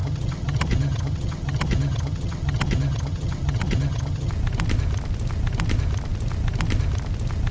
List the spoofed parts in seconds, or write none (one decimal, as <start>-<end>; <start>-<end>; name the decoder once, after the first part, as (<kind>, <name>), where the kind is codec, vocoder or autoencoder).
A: 0.0-4.3 (vocoder, HiFi-GAN)